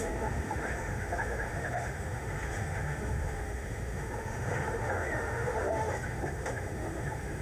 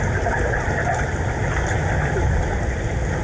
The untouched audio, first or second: second